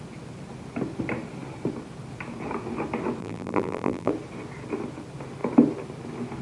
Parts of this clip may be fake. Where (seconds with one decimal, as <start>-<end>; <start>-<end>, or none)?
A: 3.2-4.1